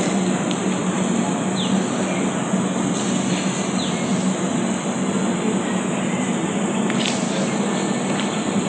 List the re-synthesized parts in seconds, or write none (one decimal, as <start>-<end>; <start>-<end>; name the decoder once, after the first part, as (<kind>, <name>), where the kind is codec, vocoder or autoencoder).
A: none